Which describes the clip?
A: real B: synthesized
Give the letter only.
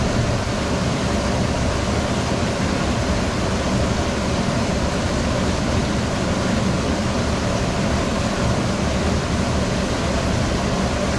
A